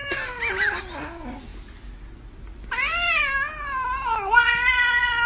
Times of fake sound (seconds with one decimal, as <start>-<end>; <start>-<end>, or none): none